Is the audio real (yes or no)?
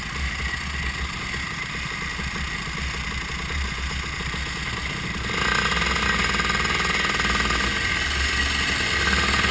yes